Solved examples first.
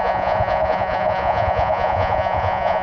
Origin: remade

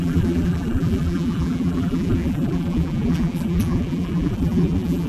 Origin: remade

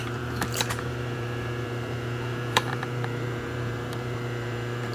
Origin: remade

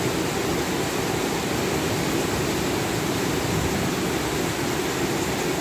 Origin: recorded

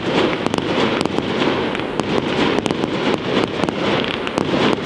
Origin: recorded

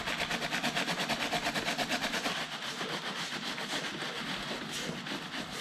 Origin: recorded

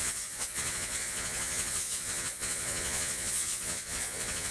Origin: remade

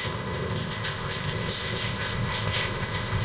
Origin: remade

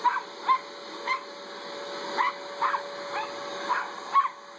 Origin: recorded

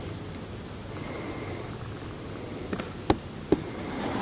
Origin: recorded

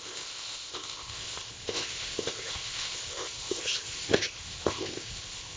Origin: remade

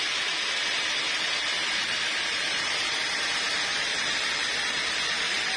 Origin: recorded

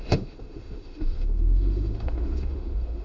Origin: remade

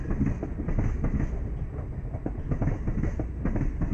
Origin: recorded